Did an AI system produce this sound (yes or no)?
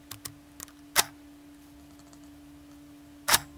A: no